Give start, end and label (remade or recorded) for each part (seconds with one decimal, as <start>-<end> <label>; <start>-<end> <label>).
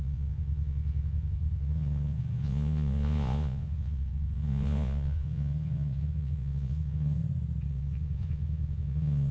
0.0-7.2 remade; 7.2-7.7 recorded; 7.7-9.3 remade